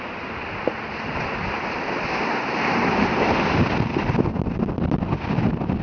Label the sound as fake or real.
real